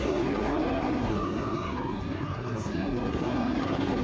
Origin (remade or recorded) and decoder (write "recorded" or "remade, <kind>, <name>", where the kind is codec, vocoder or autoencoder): remade, codec, SNAC